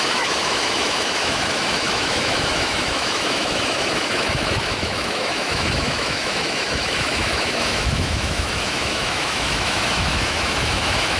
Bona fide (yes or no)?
no